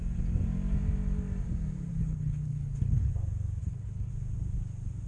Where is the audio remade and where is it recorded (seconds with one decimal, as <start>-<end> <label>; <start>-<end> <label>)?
0.0-2.0 recorded; 2.0-3.1 remade; 3.1-3.6 recorded; 3.6-4.1 remade; 4.1-5.1 recorded